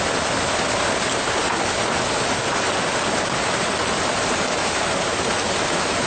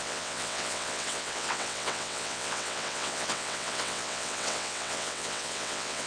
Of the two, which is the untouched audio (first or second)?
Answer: first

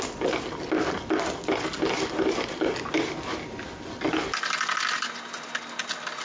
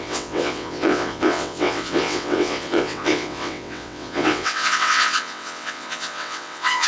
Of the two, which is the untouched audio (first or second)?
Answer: first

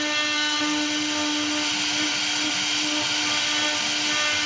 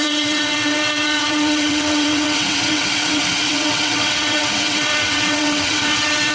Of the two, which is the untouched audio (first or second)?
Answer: first